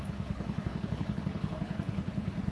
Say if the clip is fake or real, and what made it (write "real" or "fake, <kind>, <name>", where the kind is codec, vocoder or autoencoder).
fake, codec, HILCodec